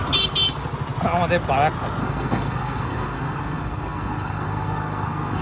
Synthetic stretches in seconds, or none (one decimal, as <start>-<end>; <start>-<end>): 2.0-5.4